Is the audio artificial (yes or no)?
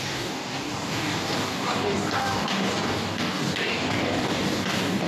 yes